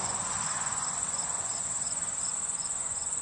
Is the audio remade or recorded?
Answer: remade